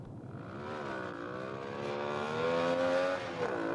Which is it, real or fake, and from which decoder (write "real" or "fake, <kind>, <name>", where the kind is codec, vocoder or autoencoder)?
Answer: real